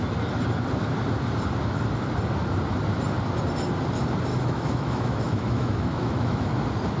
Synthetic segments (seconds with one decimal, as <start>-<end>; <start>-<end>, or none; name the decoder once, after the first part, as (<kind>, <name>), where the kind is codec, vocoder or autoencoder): 4.3-6.6 (autoencoder, DAC-VAE)